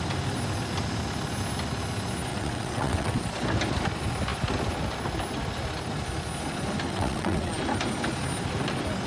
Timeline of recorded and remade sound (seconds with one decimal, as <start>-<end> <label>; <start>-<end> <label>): 0.0-2.3 recorded; 2.3-3.2 remade; 3.2-6.9 recorded; 6.9-7.5 remade; 7.5-9.1 recorded